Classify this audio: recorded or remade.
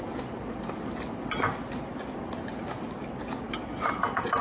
recorded